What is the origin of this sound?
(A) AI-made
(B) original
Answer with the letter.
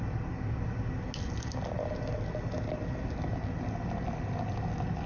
B